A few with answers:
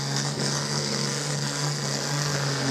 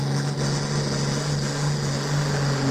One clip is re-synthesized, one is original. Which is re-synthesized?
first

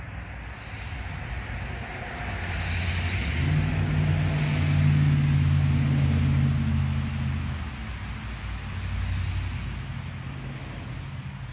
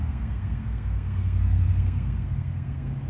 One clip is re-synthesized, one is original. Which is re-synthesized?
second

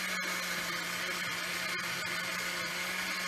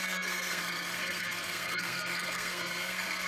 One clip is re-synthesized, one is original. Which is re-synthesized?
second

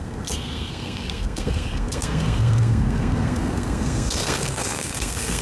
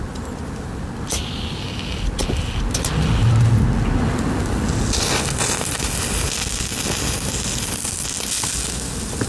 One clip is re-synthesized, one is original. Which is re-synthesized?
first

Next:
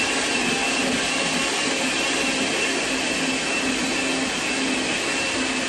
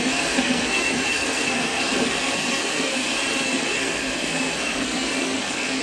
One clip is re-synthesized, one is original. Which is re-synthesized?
second